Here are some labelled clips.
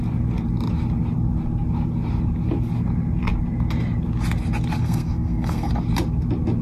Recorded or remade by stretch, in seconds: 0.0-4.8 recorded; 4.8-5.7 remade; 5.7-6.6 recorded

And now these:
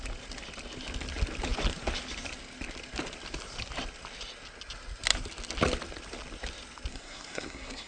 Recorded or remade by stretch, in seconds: 0.0-6.9 recorded; 6.9-7.9 remade

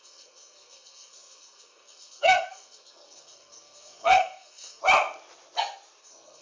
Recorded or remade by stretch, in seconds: 0.0-4.8 remade; 4.8-6.0 recorded; 6.0-6.4 remade

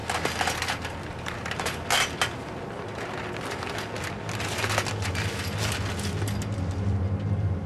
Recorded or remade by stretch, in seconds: 0.0-7.7 recorded

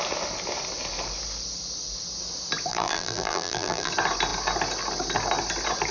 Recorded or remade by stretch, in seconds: 0.0-2.7 recorded; 2.7-3.9 remade; 3.9-5.9 recorded

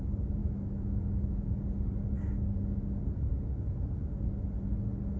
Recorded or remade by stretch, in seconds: 0.0-0.4 recorded; 0.4-1.5 remade; 1.5-5.2 recorded